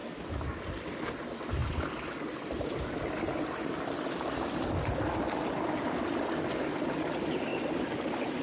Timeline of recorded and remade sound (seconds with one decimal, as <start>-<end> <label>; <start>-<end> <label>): 0.0-8.4 recorded